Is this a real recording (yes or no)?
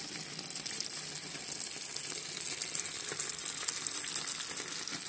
yes